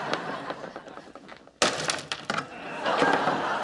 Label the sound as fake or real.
real